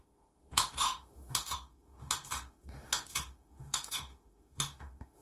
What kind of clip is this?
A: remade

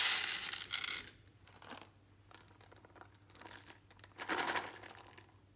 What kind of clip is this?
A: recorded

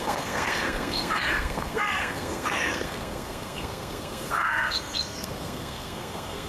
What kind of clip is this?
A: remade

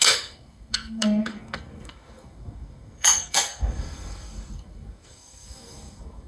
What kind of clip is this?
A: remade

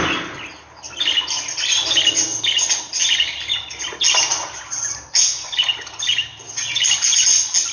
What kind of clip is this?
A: recorded